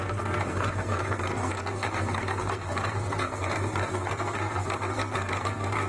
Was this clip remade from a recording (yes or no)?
yes